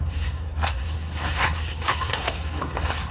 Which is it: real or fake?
fake